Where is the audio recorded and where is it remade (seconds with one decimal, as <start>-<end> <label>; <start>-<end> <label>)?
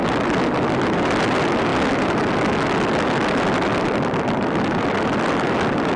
0.0-6.0 recorded